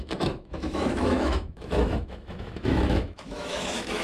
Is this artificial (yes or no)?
yes